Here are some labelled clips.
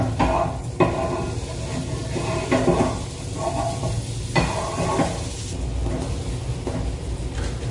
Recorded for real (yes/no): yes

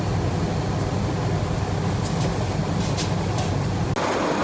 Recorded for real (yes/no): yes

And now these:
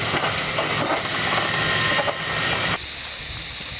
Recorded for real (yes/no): yes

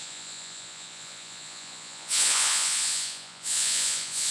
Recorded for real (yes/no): no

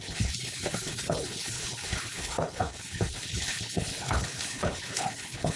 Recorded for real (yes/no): no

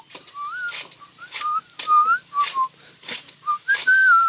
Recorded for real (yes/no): yes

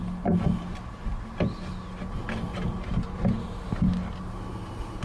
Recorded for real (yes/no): yes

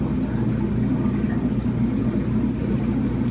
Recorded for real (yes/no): yes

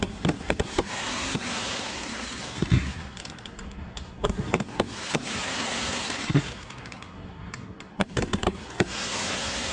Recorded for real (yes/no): no